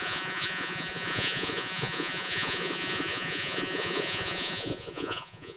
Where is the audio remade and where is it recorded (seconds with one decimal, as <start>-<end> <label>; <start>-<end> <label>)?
0.0-5.6 remade